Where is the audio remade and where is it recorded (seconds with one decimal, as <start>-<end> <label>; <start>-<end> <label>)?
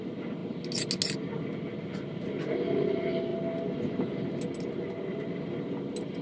0.0-6.2 recorded